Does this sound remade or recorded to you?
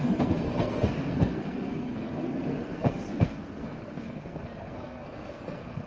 remade